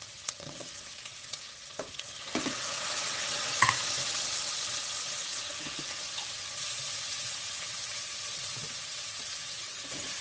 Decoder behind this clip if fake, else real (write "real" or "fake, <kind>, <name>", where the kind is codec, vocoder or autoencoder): fake, vocoder, WaveNeXt